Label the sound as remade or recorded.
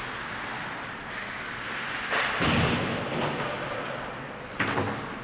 recorded